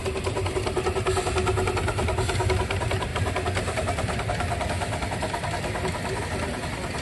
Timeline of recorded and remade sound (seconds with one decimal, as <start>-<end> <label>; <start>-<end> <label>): 0.0-7.0 recorded